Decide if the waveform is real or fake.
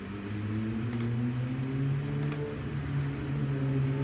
real